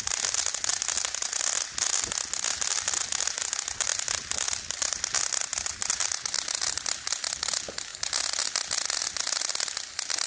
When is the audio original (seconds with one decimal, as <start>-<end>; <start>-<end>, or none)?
0.0-10.3